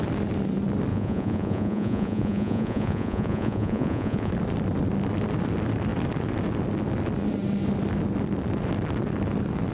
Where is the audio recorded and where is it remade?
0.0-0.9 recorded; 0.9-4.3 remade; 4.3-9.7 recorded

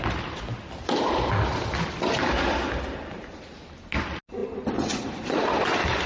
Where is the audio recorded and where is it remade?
0.0-6.1 recorded

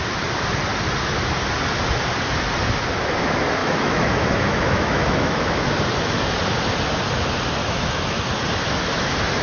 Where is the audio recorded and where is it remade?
0.0-3.6 recorded; 3.6-5.7 remade; 5.7-7.6 recorded; 7.6-8.2 remade; 8.2-9.4 recorded

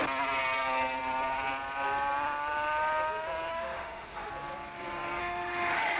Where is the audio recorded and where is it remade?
0.0-3.5 recorded; 3.5-4.3 remade; 4.3-5.2 recorded; 5.2-6.0 remade

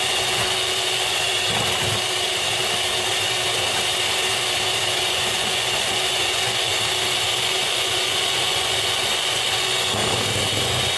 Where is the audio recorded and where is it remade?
0.0-1.3 remade; 1.3-5.0 recorded; 5.0-6.7 remade; 6.7-7.4 recorded; 7.4-10.0 remade; 10.0-10.6 recorded; 10.6-11.0 remade

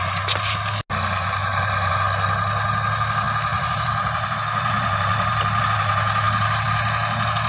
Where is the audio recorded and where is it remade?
0.0-1.4 recorded; 1.4-1.9 remade; 1.9-3.5 recorded; 3.5-5.6 remade; 5.6-7.5 recorded